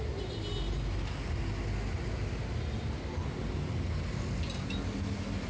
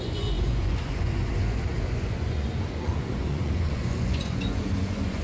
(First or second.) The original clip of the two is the first